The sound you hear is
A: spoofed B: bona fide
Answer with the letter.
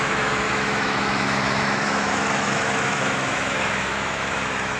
A